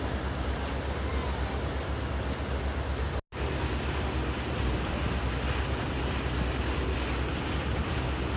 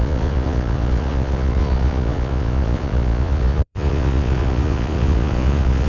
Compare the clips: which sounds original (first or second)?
first